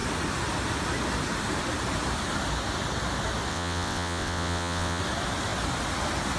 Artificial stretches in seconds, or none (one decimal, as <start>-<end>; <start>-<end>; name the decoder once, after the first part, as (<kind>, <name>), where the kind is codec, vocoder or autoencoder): 3.5-5.0 (vocoder, WaveNeXt)